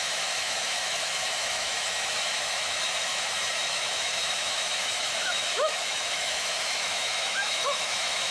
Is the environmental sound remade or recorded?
remade